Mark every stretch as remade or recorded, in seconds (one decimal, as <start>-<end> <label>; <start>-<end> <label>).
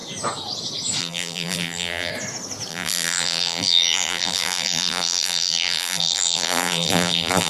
0.0-1.0 recorded; 1.0-2.1 remade; 2.1-2.7 recorded; 2.7-7.5 remade